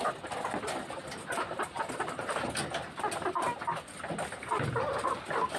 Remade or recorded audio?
recorded